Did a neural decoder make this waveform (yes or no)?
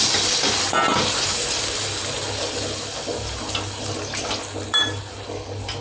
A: no